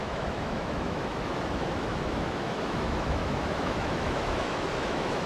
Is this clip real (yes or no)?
no